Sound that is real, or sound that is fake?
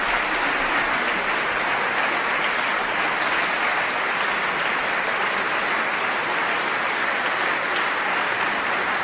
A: real